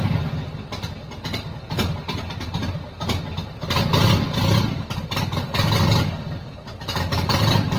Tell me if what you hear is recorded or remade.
recorded